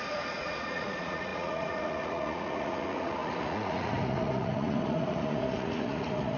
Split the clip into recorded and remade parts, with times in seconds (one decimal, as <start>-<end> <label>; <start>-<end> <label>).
0.0-6.4 remade